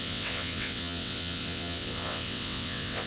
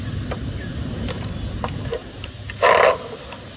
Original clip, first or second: second